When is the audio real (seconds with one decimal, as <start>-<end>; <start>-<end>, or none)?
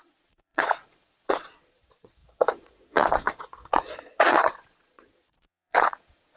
none